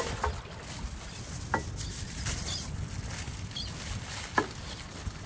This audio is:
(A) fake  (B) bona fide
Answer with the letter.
B